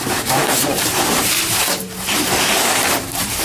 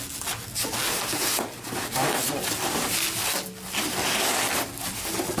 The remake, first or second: first